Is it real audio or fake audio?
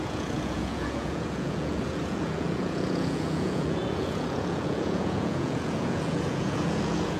fake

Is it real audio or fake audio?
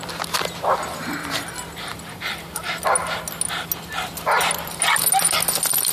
real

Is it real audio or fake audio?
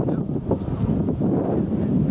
real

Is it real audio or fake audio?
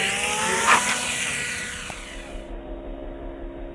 real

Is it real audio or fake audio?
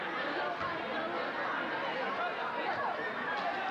real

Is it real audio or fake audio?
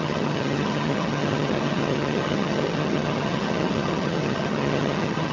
fake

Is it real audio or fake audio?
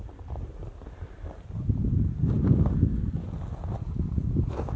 real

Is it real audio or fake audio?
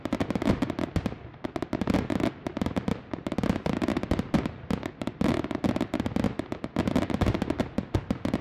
real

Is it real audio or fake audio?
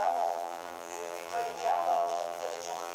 fake